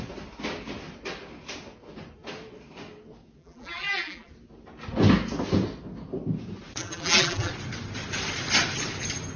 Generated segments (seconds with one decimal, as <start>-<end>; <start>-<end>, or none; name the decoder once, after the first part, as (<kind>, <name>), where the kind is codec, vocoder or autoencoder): 3.4-4.3 (vocoder, BigVGAN v2); 6.8-7.5